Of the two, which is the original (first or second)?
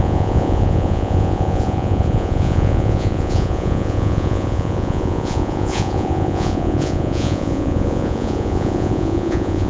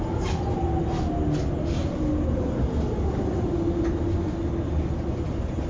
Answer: second